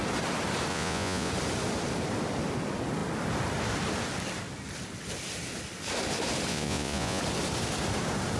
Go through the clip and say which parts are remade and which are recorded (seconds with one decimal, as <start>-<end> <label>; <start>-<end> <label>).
0.0-0.7 recorded; 0.7-1.3 remade; 1.3-6.5 recorded; 6.5-7.2 remade; 7.2-8.4 recorded